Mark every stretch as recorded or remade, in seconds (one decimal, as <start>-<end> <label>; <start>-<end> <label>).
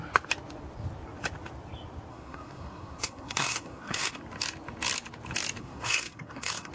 0.0-2.1 recorded; 2.1-4.2 remade; 4.2-5.6 recorded; 5.6-6.7 remade